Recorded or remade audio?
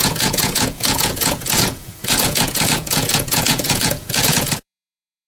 remade